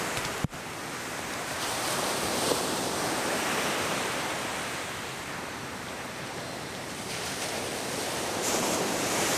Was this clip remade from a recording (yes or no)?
yes